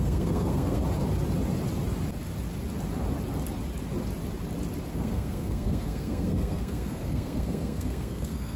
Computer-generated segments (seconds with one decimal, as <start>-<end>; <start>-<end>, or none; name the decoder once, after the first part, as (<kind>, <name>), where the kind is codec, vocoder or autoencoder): 0.0-0.8 (codec, SNAC); 4.9-8.6